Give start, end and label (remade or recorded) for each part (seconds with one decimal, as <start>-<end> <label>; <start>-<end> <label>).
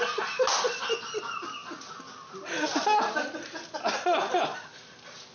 0.0-5.3 recorded